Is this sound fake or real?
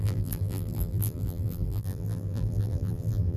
fake